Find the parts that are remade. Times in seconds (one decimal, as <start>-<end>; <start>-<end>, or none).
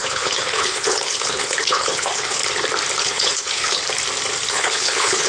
0.0-2.4; 3.0-3.8; 4.5-5.3